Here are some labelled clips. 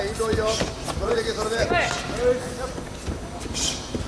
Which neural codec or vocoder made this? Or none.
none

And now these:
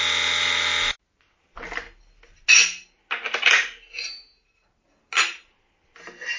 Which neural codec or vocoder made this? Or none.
none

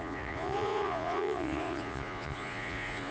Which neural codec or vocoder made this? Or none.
vocoder, Vocos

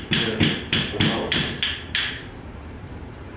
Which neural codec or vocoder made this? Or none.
vocoder, BigVGAN v2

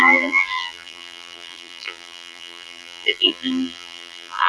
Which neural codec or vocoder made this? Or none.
vocoder, BigVGAN v2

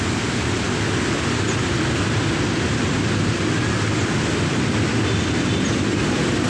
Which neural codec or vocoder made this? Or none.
none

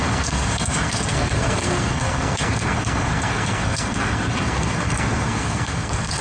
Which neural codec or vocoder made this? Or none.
codec, SNAC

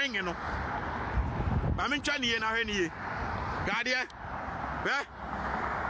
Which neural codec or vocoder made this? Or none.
none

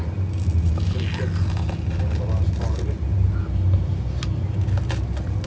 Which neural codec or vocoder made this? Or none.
none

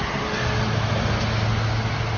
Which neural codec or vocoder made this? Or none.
none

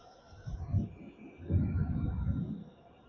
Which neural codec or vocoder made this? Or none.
none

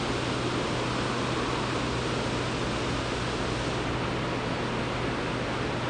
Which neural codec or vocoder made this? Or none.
none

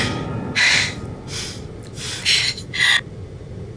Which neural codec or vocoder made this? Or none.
none